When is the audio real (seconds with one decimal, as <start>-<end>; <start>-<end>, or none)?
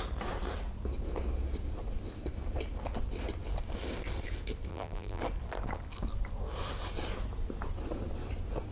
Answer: 0.0-4.7; 5.2-8.7